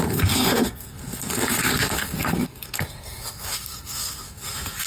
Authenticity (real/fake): fake